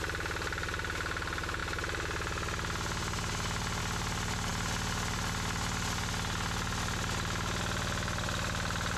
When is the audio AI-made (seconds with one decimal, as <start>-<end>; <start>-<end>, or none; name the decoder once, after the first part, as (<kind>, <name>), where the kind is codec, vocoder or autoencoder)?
none